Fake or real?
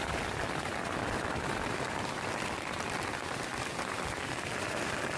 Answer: real